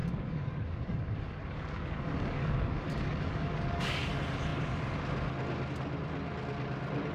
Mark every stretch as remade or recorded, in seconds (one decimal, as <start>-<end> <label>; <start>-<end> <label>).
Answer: 0.0-4.1 remade; 4.1-7.1 recorded